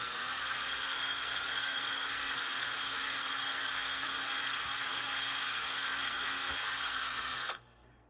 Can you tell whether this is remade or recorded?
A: remade